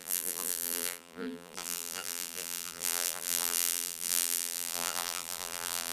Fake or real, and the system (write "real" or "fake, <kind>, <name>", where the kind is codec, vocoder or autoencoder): fake, vocoder, BigVGAN v2